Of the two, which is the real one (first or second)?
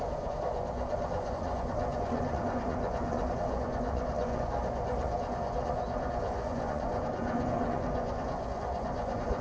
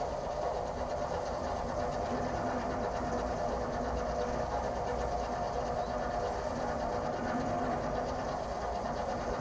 second